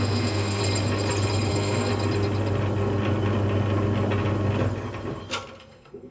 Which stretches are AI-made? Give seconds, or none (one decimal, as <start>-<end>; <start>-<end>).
0.0-0.6; 1.5-1.9; 5.6-6.1